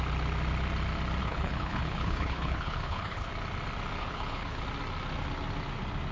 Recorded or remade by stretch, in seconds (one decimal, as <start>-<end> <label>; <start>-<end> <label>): 0.0-1.2 recorded; 1.2-3.3 remade; 3.3-4.0 recorded; 4.0-4.6 remade; 4.6-6.1 recorded